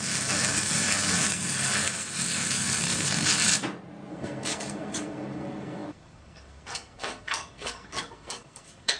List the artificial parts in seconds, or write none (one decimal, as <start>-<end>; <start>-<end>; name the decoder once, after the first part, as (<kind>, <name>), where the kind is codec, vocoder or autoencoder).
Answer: 0.0-3.5 (codec, SNAC); 4.1-9.0